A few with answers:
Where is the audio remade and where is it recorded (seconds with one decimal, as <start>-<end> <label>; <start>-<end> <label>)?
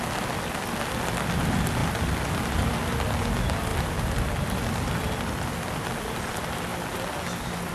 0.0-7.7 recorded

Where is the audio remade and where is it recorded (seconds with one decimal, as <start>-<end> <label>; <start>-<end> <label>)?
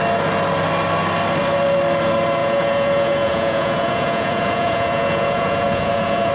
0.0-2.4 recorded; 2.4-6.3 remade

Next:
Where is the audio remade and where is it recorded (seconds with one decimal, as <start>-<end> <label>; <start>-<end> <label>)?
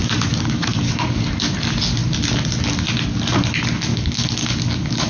0.0-1.2 remade; 1.2-3.9 recorded; 3.9-5.1 remade